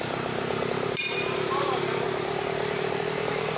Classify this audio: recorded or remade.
remade